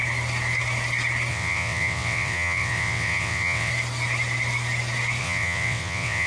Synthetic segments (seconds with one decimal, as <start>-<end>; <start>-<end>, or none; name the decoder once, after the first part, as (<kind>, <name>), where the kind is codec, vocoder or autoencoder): 1.3-3.7 (vocoder, WaveNeXt); 5.2-6.3